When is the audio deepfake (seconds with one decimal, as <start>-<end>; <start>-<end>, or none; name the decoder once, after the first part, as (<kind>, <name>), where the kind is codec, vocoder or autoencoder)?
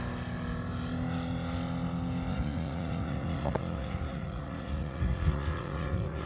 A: 2.3-6.3 (vocoder, Vocos)